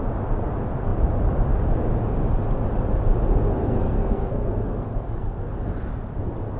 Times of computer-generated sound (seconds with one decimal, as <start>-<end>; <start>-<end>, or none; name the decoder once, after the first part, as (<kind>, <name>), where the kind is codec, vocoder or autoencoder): 3.6-5.5 (codec, SNAC)